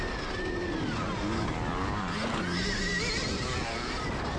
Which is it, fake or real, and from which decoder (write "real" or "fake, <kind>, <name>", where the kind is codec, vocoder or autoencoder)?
real